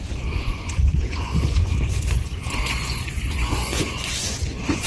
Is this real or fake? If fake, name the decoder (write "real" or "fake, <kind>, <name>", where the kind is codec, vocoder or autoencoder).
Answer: fake, vocoder, Vocos